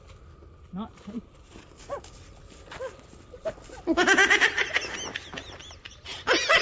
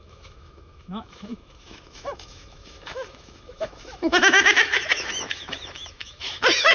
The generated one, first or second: second